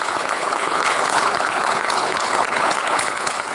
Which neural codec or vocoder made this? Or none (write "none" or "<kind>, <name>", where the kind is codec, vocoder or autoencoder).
codec, HILCodec